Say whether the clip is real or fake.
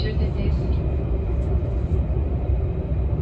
real